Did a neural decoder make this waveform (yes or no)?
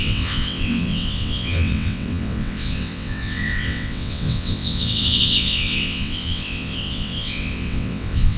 yes